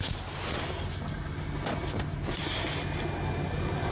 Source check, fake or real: real